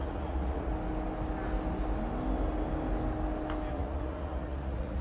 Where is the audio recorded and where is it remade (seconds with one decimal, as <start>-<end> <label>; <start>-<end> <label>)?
0.0-0.7 remade; 0.7-3.7 recorded; 3.7-5.0 remade